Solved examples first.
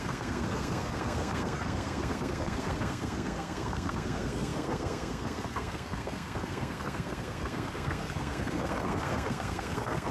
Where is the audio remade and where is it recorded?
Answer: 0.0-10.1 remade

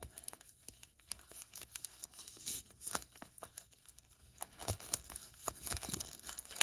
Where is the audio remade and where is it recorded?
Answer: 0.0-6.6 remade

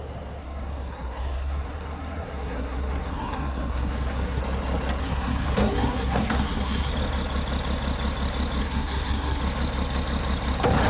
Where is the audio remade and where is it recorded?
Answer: 0.0-0.4 recorded; 0.4-4.4 remade; 4.4-5.0 recorded; 5.0-6.9 remade; 6.9-8.6 recorded; 8.6-9.4 remade; 9.4-10.9 recorded

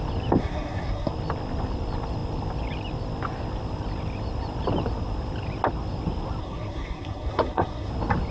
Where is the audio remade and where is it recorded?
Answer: 0.0-0.4 recorded; 0.4-1.1 remade; 1.1-6.4 recorded; 6.4-7.9 remade; 7.9-8.3 recorded